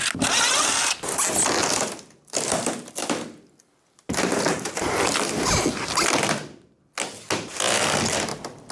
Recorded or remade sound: recorded